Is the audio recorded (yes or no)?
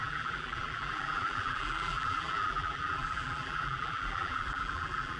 no